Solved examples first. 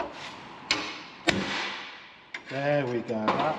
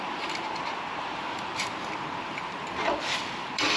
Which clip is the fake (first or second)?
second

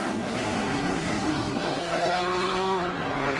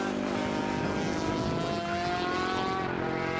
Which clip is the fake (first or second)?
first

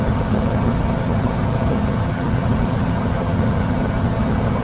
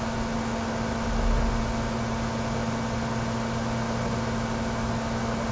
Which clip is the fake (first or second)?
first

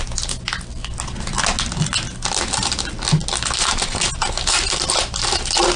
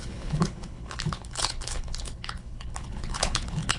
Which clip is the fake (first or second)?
second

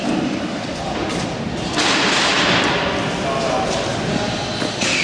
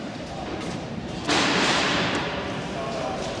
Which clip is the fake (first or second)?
second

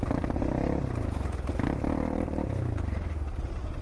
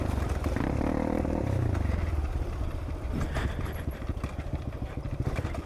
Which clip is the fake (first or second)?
second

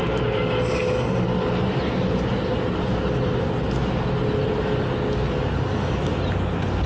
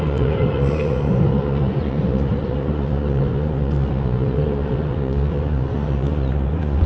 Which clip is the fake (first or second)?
second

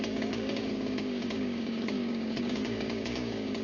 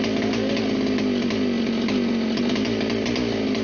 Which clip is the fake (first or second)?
first